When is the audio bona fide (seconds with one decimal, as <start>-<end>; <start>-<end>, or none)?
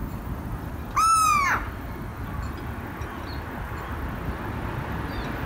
0.7-5.5